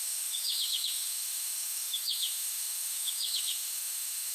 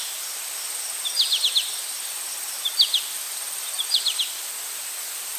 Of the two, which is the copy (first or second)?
first